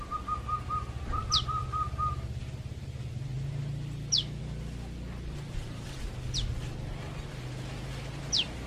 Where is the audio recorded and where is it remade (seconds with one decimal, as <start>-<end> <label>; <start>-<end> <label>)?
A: 0.0-8.7 recorded